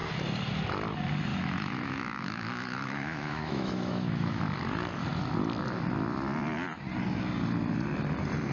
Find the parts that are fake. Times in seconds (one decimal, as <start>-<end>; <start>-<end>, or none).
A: 1.3-4.4